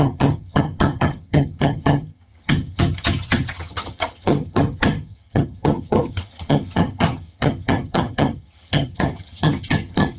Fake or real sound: fake